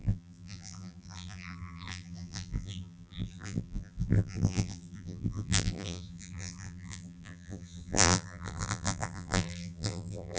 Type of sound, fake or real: fake